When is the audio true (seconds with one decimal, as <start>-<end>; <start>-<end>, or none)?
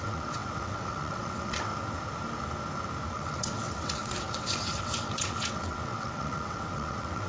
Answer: 1.7-3.1